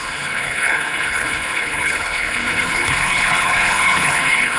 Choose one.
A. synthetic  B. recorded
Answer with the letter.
A